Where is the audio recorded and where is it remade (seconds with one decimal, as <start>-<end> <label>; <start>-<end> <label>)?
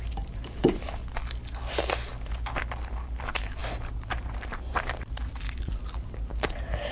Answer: 0.0-1.0 remade; 1.0-3.2 recorded; 3.2-6.9 remade